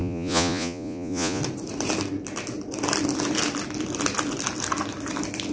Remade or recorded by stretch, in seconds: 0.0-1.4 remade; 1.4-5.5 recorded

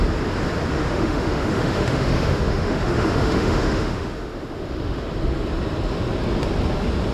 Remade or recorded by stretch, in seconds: 0.0-0.7 recorded; 0.7-5.0 remade; 5.0-7.1 recorded

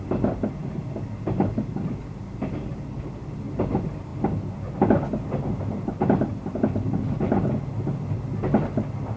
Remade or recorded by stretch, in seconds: 0.0-0.6 remade; 0.6-2.1 recorded; 2.1-4.1 remade; 4.1-9.2 recorded

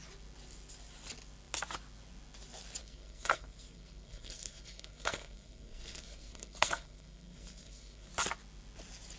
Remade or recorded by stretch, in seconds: 0.0-2.8 recorded; 2.8-8.1 remade; 8.1-9.2 recorded

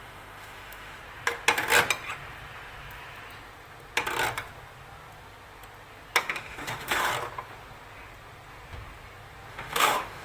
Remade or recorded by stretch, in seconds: 0.0-1.0 remade; 1.0-6.2 recorded; 6.2-7.1 remade; 7.1-9.5 recorded; 9.5-10.2 remade

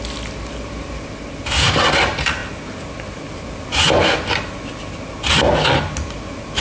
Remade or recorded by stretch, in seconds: 0.0-6.6 recorded

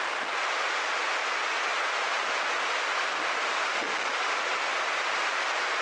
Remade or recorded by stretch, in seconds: 0.0-5.8 recorded